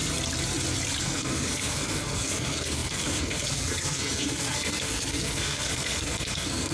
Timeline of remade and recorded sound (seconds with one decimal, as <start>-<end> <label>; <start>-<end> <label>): 0.0-1.0 recorded; 1.0-6.7 remade